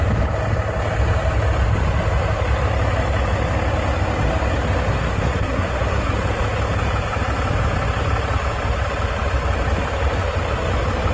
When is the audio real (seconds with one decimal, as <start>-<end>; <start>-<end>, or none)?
0.0-4.9; 6.1-11.1